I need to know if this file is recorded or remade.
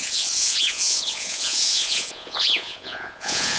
remade